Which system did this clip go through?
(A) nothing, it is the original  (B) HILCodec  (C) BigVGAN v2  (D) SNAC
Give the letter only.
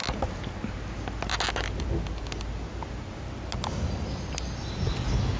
A